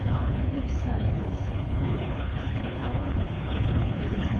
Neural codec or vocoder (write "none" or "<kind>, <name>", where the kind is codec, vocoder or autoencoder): codec, HILCodec